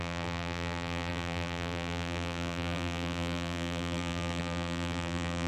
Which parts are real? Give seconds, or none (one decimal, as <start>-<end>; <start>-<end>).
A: none